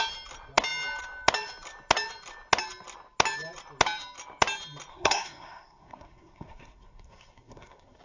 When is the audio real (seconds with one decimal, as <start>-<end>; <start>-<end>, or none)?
0.0-4.9